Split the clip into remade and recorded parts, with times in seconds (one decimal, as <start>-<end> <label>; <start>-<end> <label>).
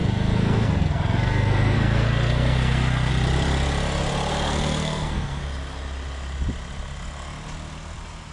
0.0-3.1 remade; 3.1-4.3 recorded; 4.3-5.4 remade; 5.4-8.3 recorded